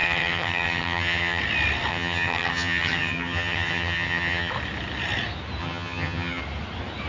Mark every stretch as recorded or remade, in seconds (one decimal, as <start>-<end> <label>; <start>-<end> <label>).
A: 0.0-1.4 remade; 1.4-1.9 recorded; 1.9-4.5 remade; 4.5-5.6 recorded; 5.6-6.4 remade; 6.4-7.1 recorded